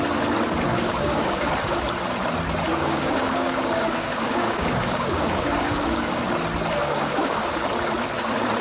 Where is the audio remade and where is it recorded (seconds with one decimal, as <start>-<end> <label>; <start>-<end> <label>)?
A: 0.0-0.7 recorded; 0.7-1.5 remade; 1.5-2.7 recorded; 2.7-6.1 remade; 6.1-6.8 recorded; 6.8-7.6 remade; 7.6-8.6 recorded

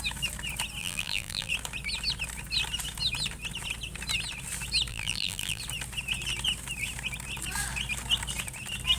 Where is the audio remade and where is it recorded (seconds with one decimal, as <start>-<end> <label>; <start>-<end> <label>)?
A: 0.0-0.8 recorded; 0.8-1.5 remade; 1.5-4.9 recorded; 4.9-5.6 remade; 5.6-9.0 recorded

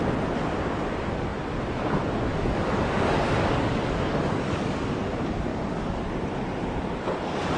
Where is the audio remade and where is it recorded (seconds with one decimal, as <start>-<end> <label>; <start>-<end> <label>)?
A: 0.0-2.3 recorded; 2.3-4.8 remade; 4.8-5.5 recorded; 5.5-6.0 remade; 6.0-7.6 recorded